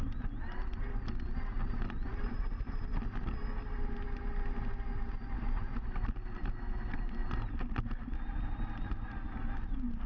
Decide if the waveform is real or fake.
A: real